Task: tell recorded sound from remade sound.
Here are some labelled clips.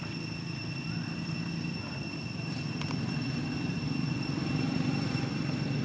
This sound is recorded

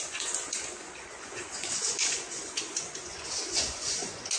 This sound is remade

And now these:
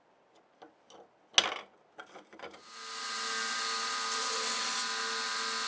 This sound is recorded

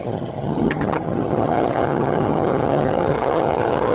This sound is remade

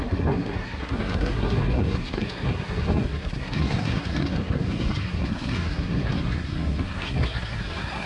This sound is remade